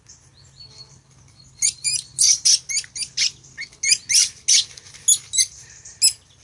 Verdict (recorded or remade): recorded